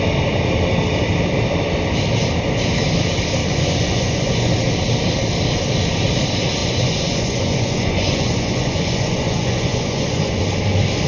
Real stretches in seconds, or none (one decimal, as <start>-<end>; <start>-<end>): 0.0-3.5; 4.5-6.6; 10.4-11.1